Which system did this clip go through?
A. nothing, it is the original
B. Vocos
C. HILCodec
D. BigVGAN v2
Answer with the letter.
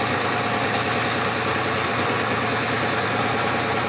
A